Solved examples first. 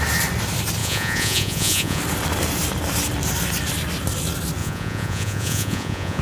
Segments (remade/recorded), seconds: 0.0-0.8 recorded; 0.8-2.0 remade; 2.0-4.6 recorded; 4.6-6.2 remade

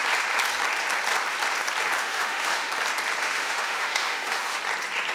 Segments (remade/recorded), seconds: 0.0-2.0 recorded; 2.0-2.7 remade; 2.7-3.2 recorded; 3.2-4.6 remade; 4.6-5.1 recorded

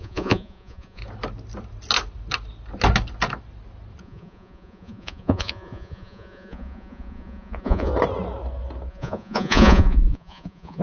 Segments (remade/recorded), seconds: 0.0-1.0 remade; 1.0-4.0 recorded; 4.0-7.9 remade; 7.9-8.9 recorded; 8.9-10.8 remade